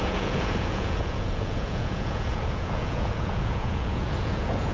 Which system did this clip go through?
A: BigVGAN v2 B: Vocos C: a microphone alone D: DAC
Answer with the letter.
B